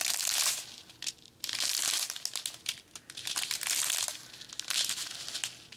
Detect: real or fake real